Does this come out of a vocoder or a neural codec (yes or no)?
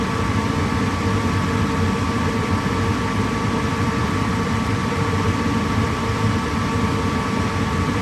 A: yes